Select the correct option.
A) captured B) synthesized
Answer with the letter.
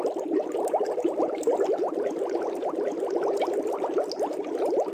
A